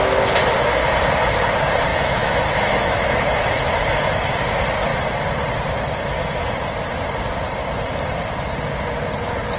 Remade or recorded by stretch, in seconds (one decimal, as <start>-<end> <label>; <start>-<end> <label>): 0.0-1.9 recorded; 1.9-4.1 remade; 4.1-9.6 recorded